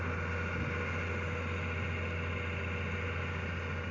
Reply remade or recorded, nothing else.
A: recorded